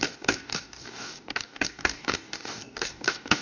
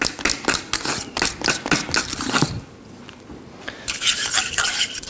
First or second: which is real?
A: second